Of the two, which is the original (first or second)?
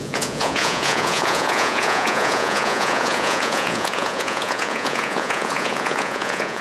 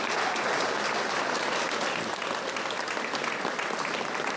second